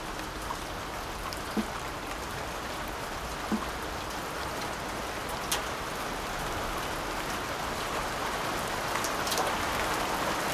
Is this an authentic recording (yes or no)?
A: yes